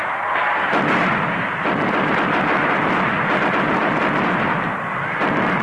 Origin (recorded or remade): recorded